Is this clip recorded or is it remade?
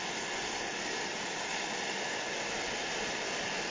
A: recorded